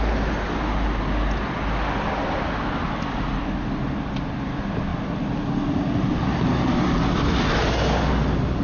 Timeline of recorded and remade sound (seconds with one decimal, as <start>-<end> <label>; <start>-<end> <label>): 0.0-8.6 recorded